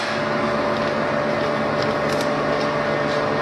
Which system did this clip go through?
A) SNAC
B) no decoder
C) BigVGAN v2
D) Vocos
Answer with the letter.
B